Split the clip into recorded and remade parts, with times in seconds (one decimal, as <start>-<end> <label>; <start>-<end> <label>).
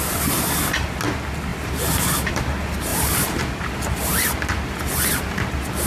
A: 0.0-2.9 recorded; 2.9-3.4 remade; 3.4-5.9 recorded